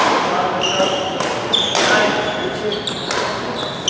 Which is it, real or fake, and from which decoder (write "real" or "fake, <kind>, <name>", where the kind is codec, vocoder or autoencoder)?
real